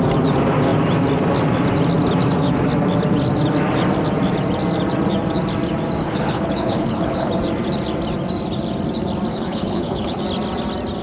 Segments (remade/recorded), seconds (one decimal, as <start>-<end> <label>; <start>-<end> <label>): 0.0-6.0 recorded; 6.0-7.3 remade; 7.3-9.3 recorded; 9.3-10.2 remade; 10.2-11.0 recorded